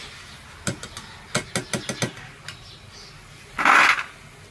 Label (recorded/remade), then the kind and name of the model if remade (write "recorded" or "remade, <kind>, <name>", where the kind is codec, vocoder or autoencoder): recorded